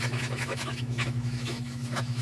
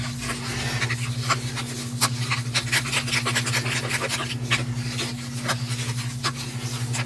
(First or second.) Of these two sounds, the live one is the second